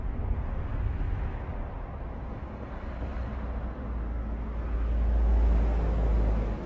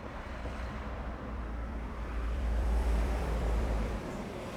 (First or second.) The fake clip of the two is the second